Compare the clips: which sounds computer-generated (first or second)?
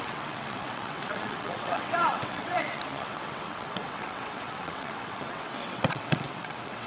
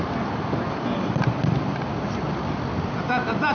first